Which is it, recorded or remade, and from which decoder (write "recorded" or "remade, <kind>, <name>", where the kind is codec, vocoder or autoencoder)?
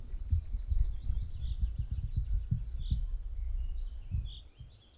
recorded